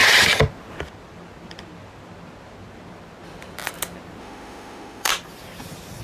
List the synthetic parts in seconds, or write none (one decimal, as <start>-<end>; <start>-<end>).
4.2-5.1